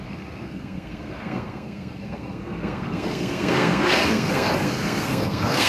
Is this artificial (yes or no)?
yes